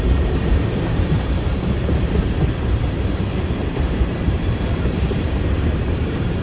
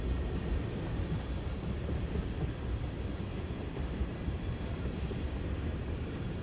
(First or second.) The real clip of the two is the second